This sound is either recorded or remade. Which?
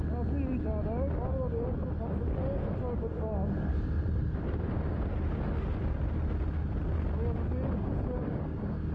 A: recorded